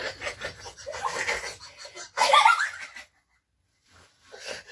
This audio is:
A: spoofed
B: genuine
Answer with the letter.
B